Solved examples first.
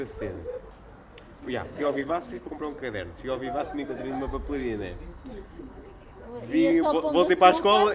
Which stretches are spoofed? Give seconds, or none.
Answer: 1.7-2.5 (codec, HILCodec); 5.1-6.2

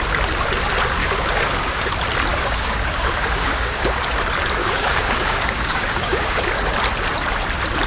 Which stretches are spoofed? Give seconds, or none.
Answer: 1.0-1.9 (codec, DAC); 2.3-4.0; 4.6-6.5

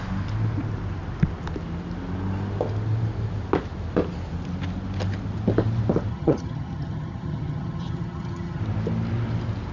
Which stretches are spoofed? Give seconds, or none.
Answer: 6.1-8.6 (vocoder, HiFi-GAN)

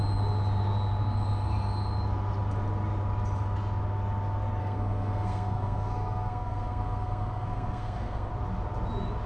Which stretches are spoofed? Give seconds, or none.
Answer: 4.6-8.3 (codec, SNAC)

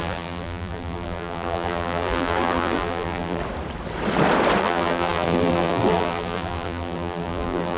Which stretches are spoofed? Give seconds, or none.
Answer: 0.0-3.4 (vocoder, BigVGAN v2); 4.6-7.8

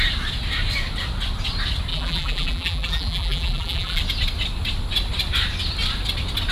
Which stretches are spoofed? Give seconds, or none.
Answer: 1.9-4.0 (vocoder, BigVGAN v2)

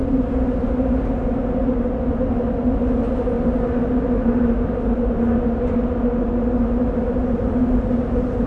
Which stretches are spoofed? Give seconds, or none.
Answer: 0.0-0.7 (vocoder, BigVGAN v2)